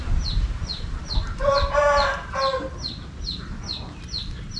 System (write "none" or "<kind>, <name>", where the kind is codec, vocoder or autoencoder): none